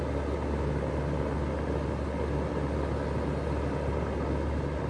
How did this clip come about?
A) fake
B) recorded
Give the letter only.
B